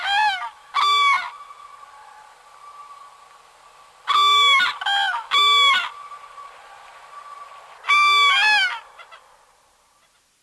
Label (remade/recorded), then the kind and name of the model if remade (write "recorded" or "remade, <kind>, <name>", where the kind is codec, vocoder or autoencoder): recorded